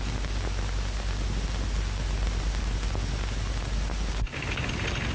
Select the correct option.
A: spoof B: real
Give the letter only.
B